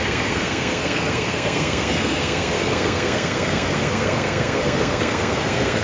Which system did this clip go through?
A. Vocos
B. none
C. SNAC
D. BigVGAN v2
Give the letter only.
C